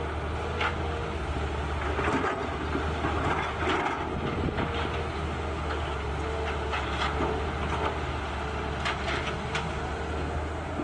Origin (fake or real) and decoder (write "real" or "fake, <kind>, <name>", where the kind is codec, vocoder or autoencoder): real